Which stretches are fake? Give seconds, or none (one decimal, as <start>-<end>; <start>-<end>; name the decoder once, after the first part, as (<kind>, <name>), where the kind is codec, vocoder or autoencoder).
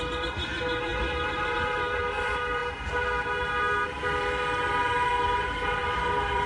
0.0-6.5 (vocoder, BigVGAN v2)